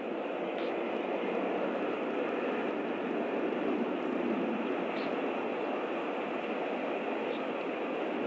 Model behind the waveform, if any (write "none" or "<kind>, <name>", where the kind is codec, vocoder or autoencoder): none